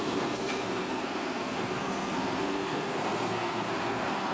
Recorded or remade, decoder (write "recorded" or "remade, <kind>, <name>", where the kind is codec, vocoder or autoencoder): remade, codec, SNAC